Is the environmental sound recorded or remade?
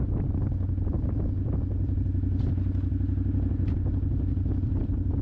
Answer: recorded